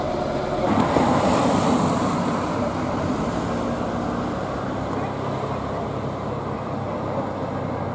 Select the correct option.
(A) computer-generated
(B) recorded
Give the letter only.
B